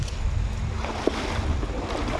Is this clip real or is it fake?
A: real